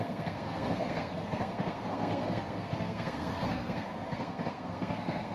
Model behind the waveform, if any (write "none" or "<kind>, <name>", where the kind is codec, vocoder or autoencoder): codec, SNAC